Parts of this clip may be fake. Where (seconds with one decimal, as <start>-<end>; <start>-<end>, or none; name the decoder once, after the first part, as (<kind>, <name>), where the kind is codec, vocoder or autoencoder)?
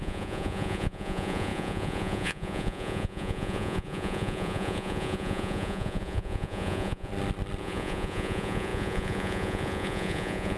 0.0-7.1 (vocoder, Vocos); 7.6-10.6